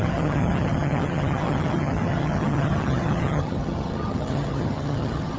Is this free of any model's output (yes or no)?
no